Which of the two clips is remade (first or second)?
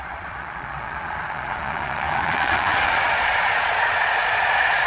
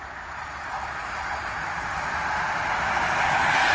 first